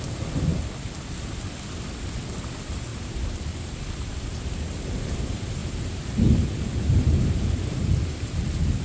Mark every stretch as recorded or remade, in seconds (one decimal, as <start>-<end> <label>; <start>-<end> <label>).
0.0-2.9 recorded; 2.9-4.5 remade; 4.5-5.6 recorded; 5.6-7.9 remade; 7.9-8.8 recorded